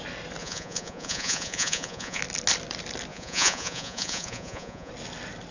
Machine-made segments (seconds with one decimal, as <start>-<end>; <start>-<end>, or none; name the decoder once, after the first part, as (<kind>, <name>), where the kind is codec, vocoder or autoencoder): 0.4-2.2 (vocoder, Vocos); 3.1-4.9